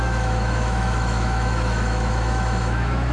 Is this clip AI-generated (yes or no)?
yes